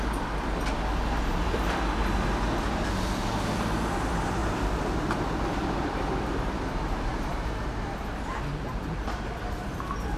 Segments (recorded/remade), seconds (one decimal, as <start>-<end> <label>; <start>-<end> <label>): 0.0-4.4 recorded; 4.4-6.1 remade; 6.1-7.3 recorded; 7.3-10.2 remade